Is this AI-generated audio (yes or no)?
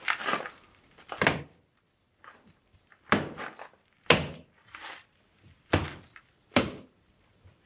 yes